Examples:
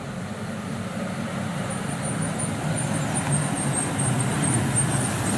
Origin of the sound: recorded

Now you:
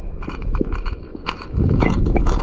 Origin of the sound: remade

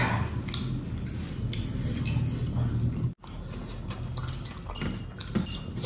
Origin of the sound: recorded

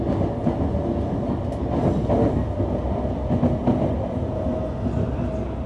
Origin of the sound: recorded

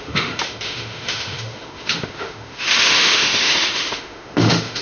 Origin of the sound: remade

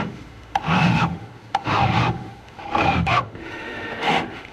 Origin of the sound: remade